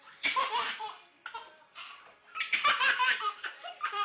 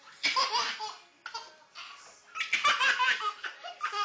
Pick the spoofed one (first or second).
first